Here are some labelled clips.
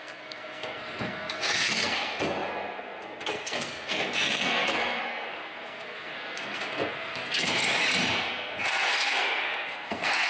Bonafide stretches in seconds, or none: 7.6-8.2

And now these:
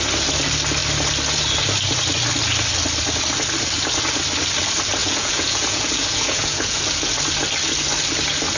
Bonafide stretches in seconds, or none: 0.0-5.0; 6.8-8.6